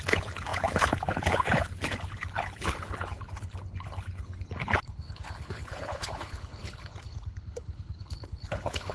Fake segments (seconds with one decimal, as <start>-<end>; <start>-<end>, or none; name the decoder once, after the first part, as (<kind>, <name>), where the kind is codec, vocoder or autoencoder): 0.0-8.9 (codec, HILCodec)